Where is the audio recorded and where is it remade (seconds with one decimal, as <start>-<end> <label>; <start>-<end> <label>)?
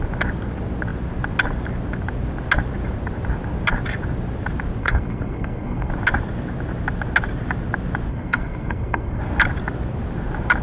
0.0-4.8 recorded; 4.8-5.9 remade; 5.9-8.1 recorded; 8.1-9.2 remade; 9.2-10.6 recorded